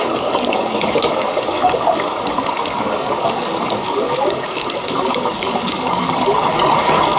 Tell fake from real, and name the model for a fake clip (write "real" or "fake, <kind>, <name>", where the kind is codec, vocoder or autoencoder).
fake, codec, DAC